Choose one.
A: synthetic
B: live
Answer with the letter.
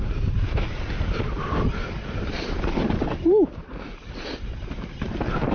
A